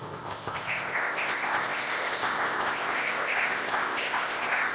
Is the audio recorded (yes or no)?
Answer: no